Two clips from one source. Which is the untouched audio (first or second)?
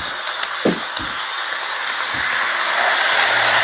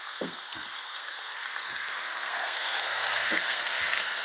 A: first